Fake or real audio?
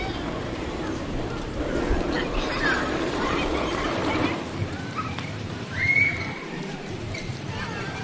fake